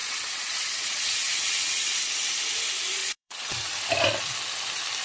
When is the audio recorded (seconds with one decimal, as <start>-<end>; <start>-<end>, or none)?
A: 2.1-3.0; 3.9-5.0